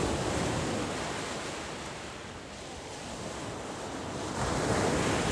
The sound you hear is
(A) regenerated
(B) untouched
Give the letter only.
B